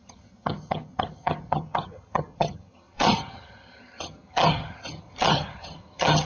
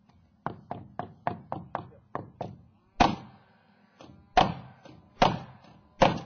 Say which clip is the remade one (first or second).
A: first